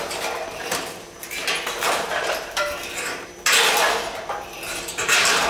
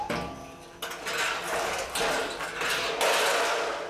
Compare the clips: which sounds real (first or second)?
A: second